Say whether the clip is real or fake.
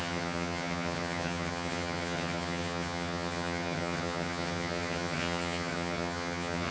fake